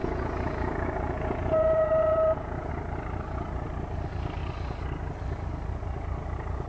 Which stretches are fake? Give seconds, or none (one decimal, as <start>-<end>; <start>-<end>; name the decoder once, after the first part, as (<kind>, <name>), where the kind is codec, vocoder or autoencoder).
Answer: 0.0-2.7 (vocoder, Vocos)